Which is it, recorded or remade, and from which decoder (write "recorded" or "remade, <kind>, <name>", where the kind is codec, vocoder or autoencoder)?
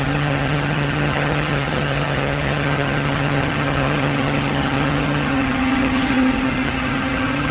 remade, vocoder, HiFi-GAN